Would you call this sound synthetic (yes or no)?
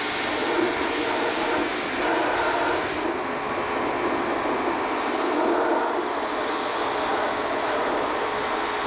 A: no